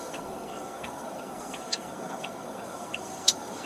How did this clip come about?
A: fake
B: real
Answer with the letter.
A